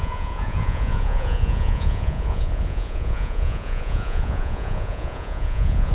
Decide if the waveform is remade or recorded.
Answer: remade